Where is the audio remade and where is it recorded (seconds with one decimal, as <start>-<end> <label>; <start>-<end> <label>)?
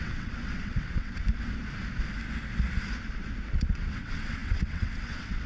0.0-1.2 remade; 1.2-3.5 recorded; 3.5-5.5 remade